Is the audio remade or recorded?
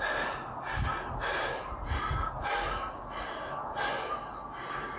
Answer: recorded